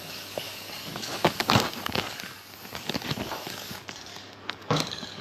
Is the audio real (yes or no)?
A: no